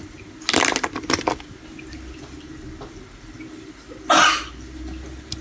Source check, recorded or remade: recorded